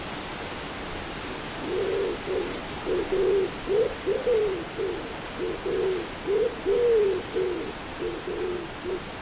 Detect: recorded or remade recorded